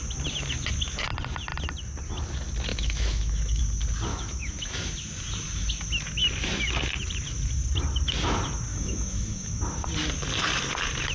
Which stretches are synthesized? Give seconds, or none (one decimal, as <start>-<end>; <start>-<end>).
2.7-3.6; 4.1-4.8; 8.7-9.6